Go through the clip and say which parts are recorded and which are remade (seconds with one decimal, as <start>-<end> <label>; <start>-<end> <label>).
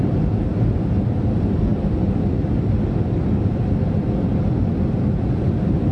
0.0-5.9 recorded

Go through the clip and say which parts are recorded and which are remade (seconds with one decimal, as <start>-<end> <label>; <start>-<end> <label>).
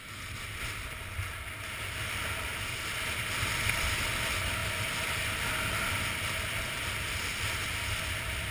0.0-8.5 recorded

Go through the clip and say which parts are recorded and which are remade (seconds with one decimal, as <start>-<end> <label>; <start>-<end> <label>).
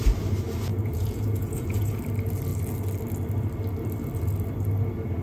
0.0-0.7 recorded; 0.7-2.0 remade; 2.0-5.2 recorded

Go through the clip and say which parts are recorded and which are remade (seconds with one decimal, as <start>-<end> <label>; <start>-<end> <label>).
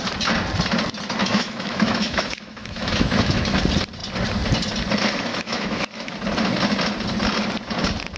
0.0-1.2 recorded; 1.2-3.6 remade; 3.6-5.3 recorded; 5.3-6.1 remade; 6.1-8.2 recorded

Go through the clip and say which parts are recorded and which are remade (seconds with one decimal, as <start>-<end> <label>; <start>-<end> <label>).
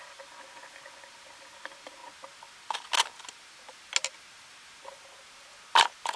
0.0-6.2 recorded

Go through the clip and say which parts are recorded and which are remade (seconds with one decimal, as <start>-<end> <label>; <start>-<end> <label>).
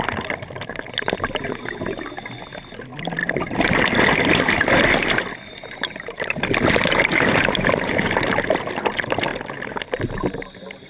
0.0-3.2 recorded; 3.2-4.2 remade; 4.2-10.9 recorded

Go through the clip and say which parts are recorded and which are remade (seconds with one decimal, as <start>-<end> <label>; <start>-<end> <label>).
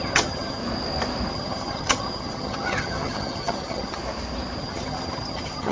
0.0-0.6 remade; 0.6-1.3 recorded; 1.3-4.0 remade; 4.0-4.6 recorded; 4.6-5.7 remade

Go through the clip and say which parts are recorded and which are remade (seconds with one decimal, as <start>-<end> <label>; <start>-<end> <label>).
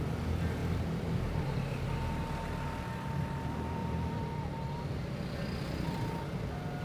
0.0-0.6 recorded; 0.6-2.1 remade; 2.1-3.8 recorded; 3.8-6.2 remade; 6.2-6.8 recorded